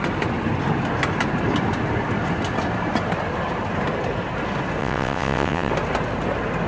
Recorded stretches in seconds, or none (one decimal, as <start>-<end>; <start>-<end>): 0.0-4.8; 5.7-6.7